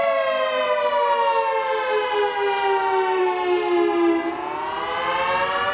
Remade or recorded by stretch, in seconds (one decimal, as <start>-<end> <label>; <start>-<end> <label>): 0.0-5.7 recorded